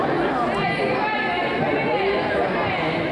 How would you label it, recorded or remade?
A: recorded